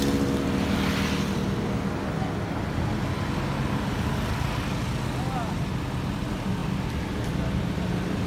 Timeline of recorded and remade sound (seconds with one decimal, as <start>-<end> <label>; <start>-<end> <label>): 0.0-8.3 recorded